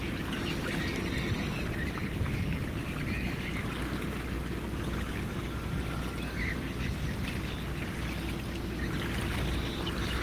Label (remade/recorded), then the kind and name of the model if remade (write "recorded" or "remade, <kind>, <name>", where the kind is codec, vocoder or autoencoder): recorded